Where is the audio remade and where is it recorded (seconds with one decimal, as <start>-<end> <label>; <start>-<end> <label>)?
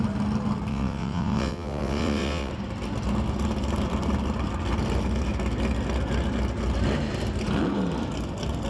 0.0-0.7 recorded; 0.7-2.5 remade; 2.5-8.7 recorded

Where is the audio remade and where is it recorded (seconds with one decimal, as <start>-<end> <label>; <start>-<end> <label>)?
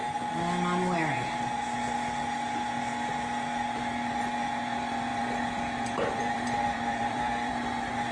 0.0-5.1 recorded; 5.1-7.5 remade; 7.5-8.1 recorded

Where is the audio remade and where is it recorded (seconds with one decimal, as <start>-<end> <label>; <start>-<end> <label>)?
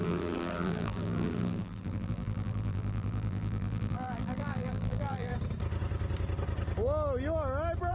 0.0-5.3 remade; 5.3-7.9 recorded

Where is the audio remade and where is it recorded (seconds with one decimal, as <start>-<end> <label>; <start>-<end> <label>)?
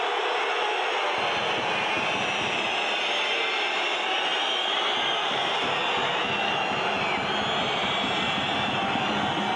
0.0-9.6 recorded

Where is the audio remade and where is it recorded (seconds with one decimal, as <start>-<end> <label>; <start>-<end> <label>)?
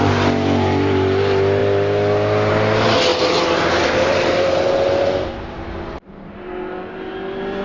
0.0-7.6 recorded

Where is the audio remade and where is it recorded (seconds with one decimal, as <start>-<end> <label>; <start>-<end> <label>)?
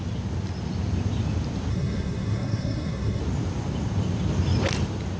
0.0-1.7 recorded; 1.7-3.2 remade; 3.2-5.2 recorded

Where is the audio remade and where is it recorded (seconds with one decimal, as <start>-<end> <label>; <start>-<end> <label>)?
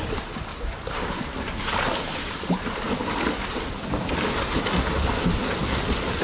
0.0-0.5 recorded; 0.5-2.9 remade; 2.9-6.2 recorded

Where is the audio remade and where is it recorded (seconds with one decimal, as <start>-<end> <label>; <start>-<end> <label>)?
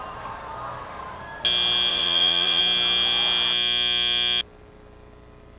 0.0-1.9 recorded; 1.9-2.6 remade; 2.6-5.6 recorded